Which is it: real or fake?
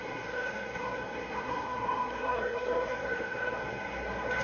fake